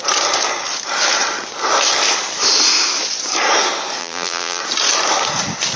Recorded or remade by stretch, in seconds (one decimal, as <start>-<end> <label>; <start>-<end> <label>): 0.0-4.0 recorded; 4.0-4.6 remade; 4.6-5.8 recorded